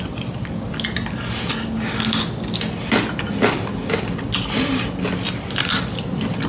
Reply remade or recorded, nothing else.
recorded